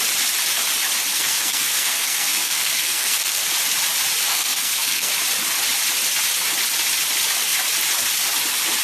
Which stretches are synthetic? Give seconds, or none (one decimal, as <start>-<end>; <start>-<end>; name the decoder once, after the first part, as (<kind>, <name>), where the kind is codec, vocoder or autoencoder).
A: 1.1-3.5 (codec, SNAC); 4.3-5.1